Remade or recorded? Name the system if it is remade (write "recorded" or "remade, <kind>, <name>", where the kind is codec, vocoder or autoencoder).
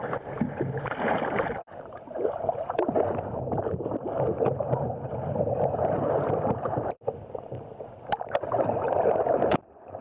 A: remade, vocoder, BigVGAN v2